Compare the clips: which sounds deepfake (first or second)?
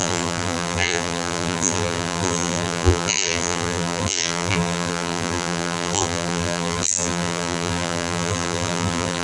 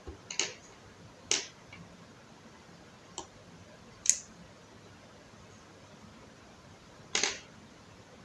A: first